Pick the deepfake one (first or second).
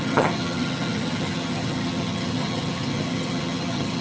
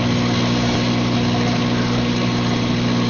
first